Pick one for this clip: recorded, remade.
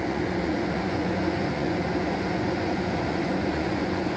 remade